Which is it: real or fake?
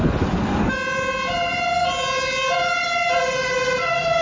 real